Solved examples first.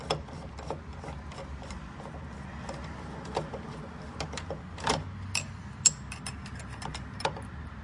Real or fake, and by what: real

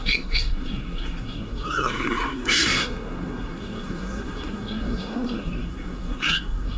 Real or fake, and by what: fake, codec, SNAC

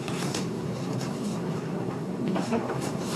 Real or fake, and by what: fake, codec, SNAC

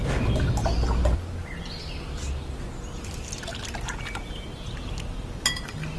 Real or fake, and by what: real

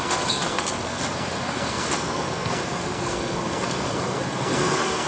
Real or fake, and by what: fake, codec, SNAC